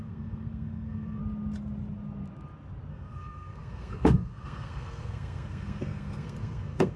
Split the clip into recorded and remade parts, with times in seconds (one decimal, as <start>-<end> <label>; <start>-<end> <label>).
0.0-1.2 remade; 1.2-2.9 recorded; 2.9-7.0 remade